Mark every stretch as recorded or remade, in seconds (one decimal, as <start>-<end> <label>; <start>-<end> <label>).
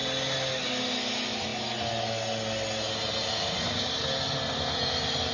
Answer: 0.0-5.3 recorded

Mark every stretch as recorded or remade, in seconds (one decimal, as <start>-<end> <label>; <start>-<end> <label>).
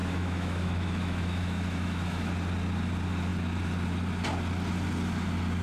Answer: 0.0-2.3 remade; 2.3-5.6 recorded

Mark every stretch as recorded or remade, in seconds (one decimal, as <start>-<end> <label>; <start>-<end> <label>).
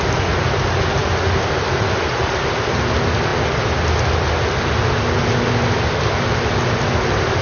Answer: 0.0-7.4 recorded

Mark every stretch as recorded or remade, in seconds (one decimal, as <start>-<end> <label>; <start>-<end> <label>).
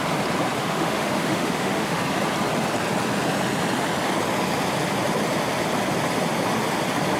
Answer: 0.0-0.6 recorded; 0.6-2.0 remade; 2.0-7.2 recorded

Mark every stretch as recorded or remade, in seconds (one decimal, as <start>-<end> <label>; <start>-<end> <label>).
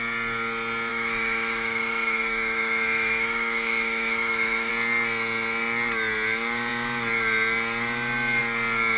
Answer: 0.0-0.9 recorded; 0.9-4.7 remade; 4.7-9.0 recorded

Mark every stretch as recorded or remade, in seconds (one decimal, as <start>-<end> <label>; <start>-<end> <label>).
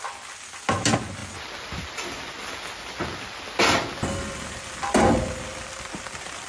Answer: 0.0-6.5 recorded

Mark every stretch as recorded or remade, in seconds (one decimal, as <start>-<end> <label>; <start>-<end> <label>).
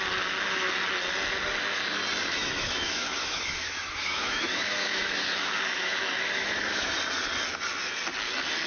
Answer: 0.0-2.4 recorded; 2.4-6.9 remade; 6.9-8.7 recorded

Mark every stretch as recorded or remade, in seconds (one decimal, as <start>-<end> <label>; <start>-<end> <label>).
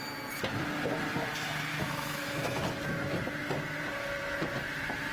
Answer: 0.0-1.7 recorded; 1.7-2.6 remade; 2.6-5.1 recorded